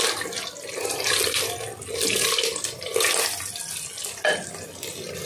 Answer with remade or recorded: recorded